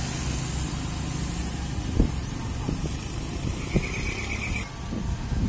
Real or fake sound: real